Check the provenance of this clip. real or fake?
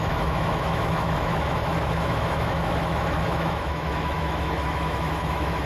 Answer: fake